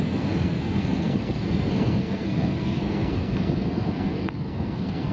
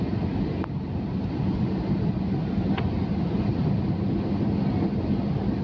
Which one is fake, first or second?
first